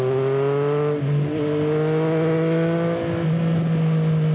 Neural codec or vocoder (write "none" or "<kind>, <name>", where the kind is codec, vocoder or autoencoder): none